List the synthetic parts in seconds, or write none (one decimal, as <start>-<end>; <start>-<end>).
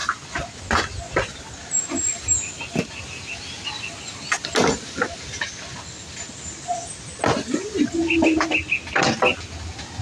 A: none